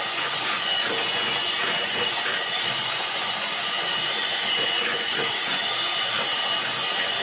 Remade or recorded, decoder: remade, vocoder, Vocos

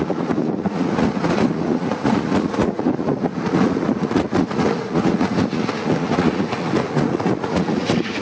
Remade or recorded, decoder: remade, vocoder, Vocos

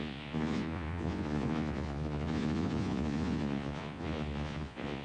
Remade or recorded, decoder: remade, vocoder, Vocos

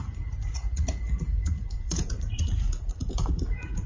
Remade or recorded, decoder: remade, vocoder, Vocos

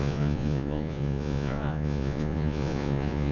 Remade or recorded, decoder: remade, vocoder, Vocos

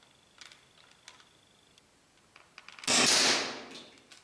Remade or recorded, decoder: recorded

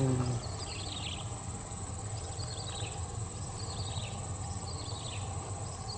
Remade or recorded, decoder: recorded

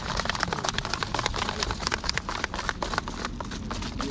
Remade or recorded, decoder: recorded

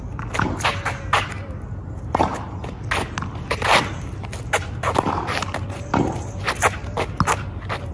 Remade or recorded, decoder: recorded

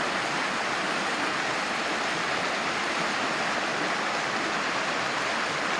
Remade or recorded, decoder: recorded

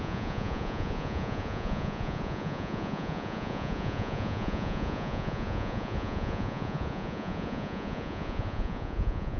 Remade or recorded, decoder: remade, vocoder, Vocos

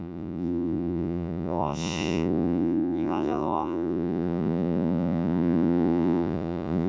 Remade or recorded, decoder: remade, vocoder, Vocos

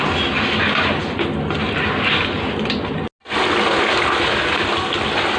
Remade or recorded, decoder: recorded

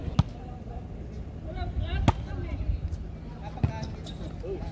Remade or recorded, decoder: recorded